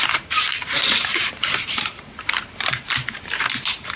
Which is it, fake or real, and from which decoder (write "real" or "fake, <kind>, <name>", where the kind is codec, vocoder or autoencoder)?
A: fake, vocoder, BigVGAN v2